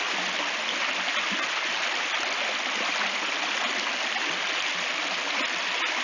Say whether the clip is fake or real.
real